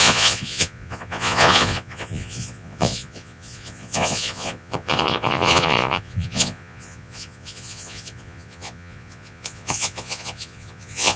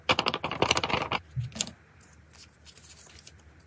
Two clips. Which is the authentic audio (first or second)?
second